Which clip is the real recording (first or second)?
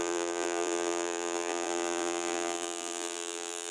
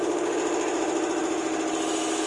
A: second